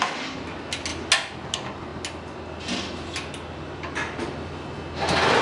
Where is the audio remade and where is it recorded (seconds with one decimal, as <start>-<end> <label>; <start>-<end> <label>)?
0.0-5.4 recorded